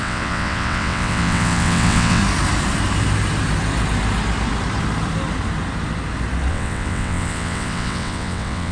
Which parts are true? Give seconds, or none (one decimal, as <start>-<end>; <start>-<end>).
2.2-6.5